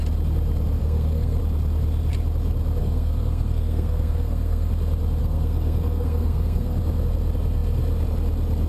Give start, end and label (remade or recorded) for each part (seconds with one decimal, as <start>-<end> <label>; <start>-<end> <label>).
0.0-0.8 recorded; 0.8-1.4 remade; 1.4-2.8 recorded; 2.8-4.7 remade; 4.7-5.2 recorded; 5.2-6.8 remade; 6.8-8.7 recorded